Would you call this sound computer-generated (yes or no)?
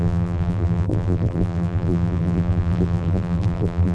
yes